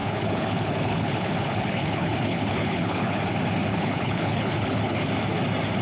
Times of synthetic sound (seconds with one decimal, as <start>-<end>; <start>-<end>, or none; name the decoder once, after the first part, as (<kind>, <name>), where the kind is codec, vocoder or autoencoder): 0.0-3.2 (codec, HILCodec); 3.7-5.1